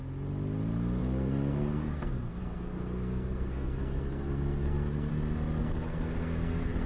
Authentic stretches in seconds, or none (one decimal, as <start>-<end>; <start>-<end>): 0.0-1.0; 5.1-5.6